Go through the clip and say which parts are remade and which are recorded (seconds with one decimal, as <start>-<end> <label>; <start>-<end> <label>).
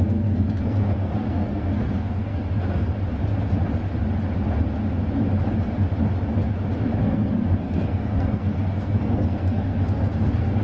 0.0-2.9 remade; 2.9-7.0 recorded; 7.0-10.6 remade